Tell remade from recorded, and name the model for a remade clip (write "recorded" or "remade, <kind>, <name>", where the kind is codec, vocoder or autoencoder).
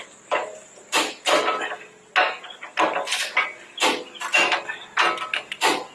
recorded